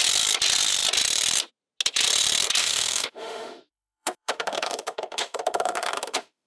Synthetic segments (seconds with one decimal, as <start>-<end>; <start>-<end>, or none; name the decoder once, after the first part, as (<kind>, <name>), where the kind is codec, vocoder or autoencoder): 2.6-6.5 (autoencoder, DAC-VAE)